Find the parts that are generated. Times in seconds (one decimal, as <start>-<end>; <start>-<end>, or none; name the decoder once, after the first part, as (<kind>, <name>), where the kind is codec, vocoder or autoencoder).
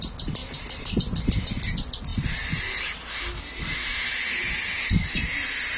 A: none